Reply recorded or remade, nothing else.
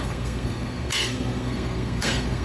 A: remade